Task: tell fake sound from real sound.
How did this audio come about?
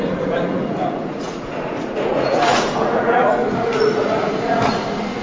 fake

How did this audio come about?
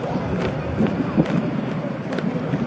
real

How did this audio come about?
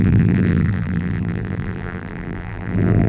fake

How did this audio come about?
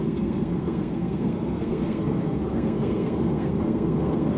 fake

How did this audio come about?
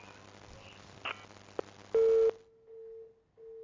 real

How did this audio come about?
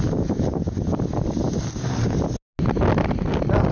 real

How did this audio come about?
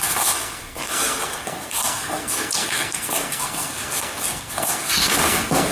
fake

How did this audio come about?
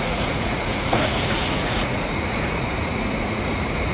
fake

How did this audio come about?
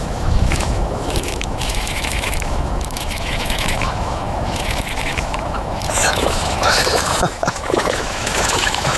fake